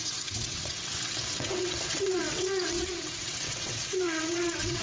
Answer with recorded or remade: remade